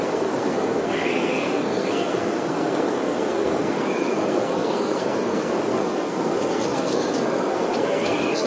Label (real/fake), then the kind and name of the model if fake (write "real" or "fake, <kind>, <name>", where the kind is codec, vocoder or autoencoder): fake, codec, SNAC